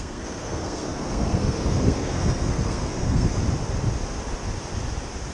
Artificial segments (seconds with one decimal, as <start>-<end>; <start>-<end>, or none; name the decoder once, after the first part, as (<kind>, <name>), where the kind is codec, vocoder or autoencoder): 0.0-3.4 (codec, SNAC)